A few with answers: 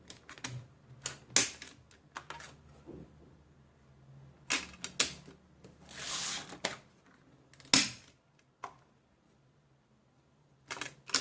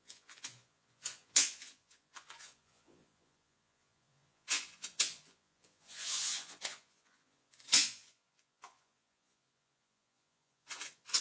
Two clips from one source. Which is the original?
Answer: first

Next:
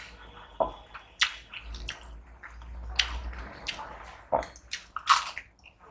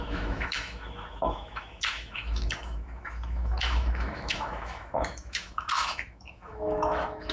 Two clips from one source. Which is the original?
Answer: first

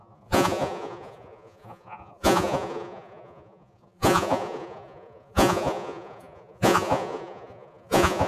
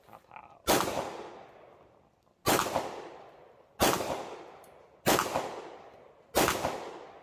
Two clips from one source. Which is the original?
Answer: second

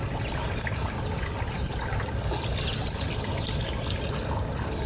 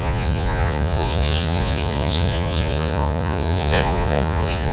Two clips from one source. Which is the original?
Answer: first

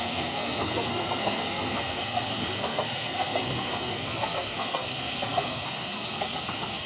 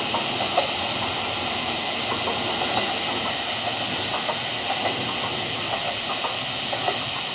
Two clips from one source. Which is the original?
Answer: second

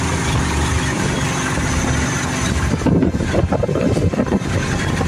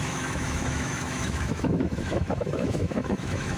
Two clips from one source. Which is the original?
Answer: first